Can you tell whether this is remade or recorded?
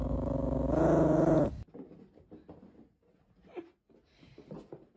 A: recorded